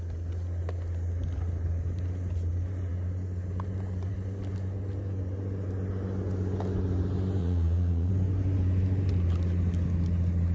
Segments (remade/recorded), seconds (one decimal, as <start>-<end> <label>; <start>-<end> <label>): 0.0-7.4 recorded; 7.4-8.1 remade; 8.1-10.5 recorded